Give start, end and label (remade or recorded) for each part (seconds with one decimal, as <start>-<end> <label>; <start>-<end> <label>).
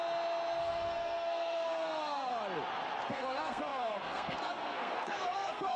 0.0-0.6 recorded; 0.6-2.3 remade; 2.3-3.1 recorded; 3.1-5.8 remade